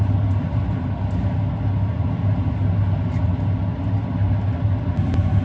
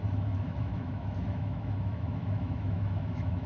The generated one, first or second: second